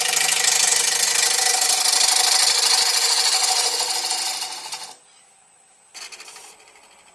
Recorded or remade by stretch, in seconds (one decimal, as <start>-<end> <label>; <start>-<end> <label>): 0.0-7.1 recorded